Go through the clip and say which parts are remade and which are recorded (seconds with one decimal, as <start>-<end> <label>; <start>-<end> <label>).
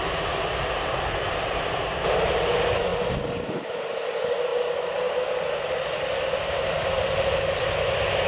0.0-8.3 recorded